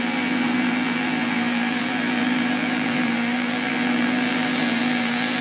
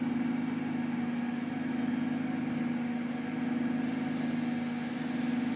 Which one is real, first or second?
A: second